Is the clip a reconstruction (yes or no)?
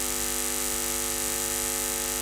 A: no